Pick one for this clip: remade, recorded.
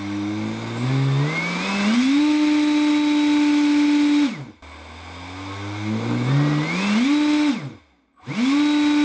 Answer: recorded